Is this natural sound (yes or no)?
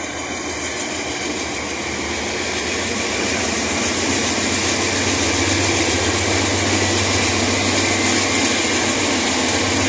yes